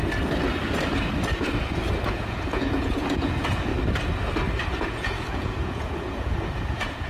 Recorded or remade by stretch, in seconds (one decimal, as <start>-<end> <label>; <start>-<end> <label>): 0.0-2.1 recorded; 2.1-3.7 remade; 3.7-4.7 recorded; 4.7-7.1 remade